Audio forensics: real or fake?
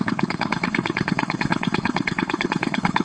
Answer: fake